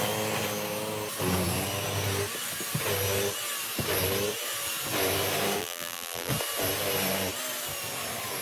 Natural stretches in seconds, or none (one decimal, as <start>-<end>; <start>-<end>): 0.0-5.6; 6.3-8.4